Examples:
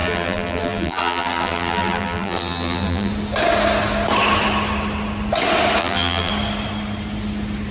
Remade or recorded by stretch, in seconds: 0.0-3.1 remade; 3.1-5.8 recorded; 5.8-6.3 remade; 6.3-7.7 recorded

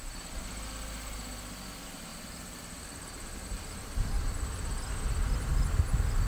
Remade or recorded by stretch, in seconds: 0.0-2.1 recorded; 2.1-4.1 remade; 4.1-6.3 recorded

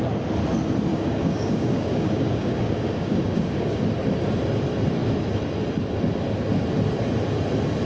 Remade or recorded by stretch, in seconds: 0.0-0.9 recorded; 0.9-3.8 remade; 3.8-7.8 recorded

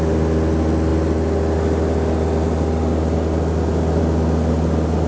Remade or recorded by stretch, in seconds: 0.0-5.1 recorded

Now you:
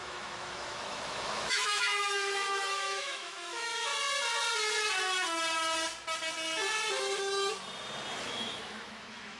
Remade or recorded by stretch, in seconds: 0.0-3.9 remade; 3.9-8.2 recorded; 8.2-9.4 remade